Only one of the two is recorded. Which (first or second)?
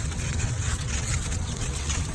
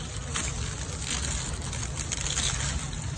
second